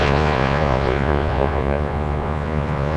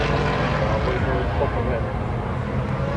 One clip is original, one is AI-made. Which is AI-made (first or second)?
first